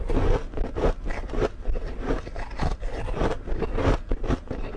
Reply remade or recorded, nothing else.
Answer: recorded